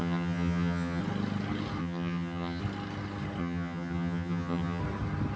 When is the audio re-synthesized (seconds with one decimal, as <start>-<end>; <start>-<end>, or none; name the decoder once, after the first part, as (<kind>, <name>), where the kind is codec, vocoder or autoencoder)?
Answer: 0.0-1.0 (vocoder, HiFi-GAN); 1.8-2.6; 3.4-4.8